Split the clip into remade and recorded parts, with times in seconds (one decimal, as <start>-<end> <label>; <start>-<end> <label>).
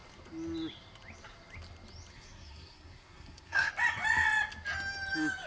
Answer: 0.0-2.1 recorded; 2.1-3.7 remade; 3.7-5.5 recorded